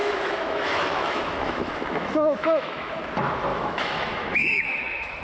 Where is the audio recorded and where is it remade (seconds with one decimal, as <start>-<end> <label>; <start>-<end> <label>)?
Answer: 0.0-3.0 remade; 3.0-3.5 recorded; 3.5-5.2 remade